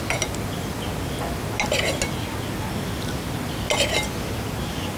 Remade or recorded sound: recorded